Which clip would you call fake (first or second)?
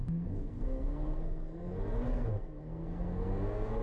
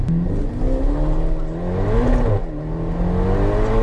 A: first